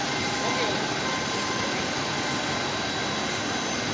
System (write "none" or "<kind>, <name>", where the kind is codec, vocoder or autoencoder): none